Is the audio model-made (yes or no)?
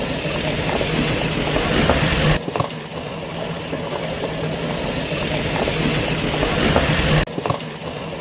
no